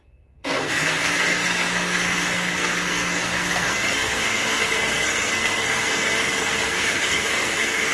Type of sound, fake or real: fake